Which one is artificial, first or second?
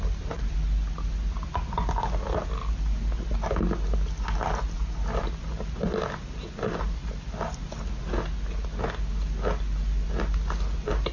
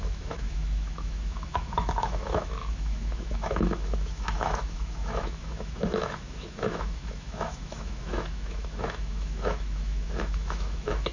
second